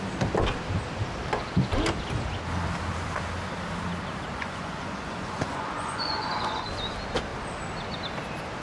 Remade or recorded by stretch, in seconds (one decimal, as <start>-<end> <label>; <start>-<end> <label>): 0.0-4.3 recorded; 4.3-6.7 remade; 6.7-8.6 recorded